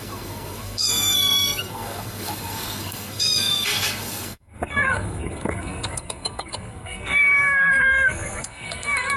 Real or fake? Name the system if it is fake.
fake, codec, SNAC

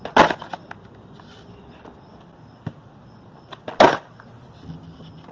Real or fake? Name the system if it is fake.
real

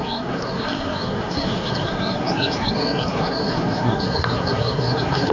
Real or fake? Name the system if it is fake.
fake, codec, SNAC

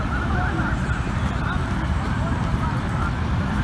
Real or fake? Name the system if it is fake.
real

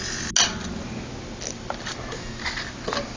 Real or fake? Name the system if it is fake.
real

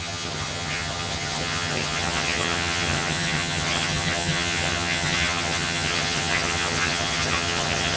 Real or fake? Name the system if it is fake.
fake, vocoder, HiFi-GAN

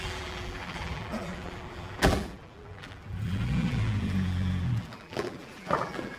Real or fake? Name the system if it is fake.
fake, vocoder, BigVGAN v2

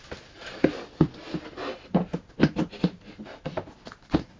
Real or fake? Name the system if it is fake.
real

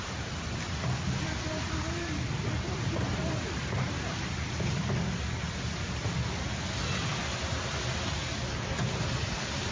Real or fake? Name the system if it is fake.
real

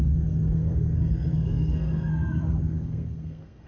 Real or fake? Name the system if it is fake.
fake, codec, SNAC